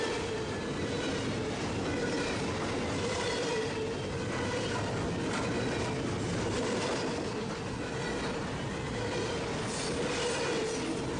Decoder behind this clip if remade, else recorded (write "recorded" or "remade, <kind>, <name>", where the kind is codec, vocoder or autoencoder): recorded